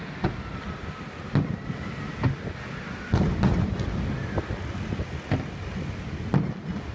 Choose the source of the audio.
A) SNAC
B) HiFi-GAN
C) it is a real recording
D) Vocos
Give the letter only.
C